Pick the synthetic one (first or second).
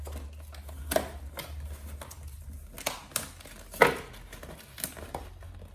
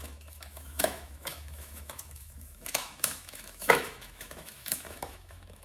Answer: second